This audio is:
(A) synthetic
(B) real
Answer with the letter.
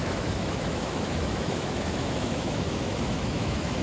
A